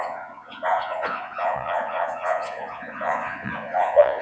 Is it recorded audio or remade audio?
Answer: remade